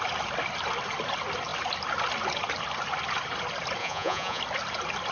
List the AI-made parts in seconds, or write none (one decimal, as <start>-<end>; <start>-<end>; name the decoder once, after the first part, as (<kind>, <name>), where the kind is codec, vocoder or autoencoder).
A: 3.8-4.4 (vocoder, Vocos)